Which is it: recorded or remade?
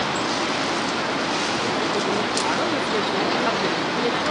recorded